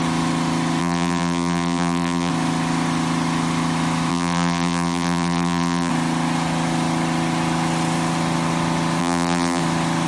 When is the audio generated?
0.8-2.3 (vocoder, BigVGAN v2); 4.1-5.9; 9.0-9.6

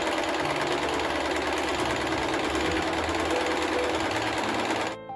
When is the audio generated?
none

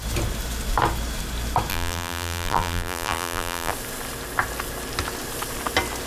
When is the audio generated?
1.7-3.7 (vocoder, BigVGAN v2)